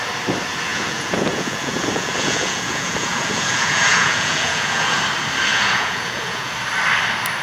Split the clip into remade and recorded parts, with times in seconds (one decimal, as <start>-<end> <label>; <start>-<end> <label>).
0.0-0.7 recorded; 0.7-5.0 remade; 5.0-5.5 recorded; 5.5-6.5 remade; 6.5-7.4 recorded